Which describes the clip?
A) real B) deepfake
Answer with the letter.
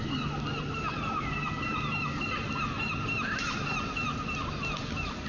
A